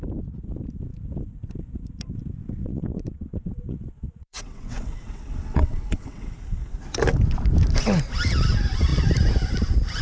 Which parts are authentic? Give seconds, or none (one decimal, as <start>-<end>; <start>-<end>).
0.0-2.6; 6.3-10.0